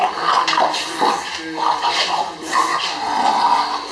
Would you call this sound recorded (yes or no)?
yes